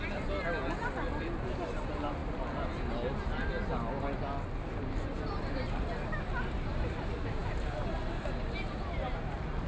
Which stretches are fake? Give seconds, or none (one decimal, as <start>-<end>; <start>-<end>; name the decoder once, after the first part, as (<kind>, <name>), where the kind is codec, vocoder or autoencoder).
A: none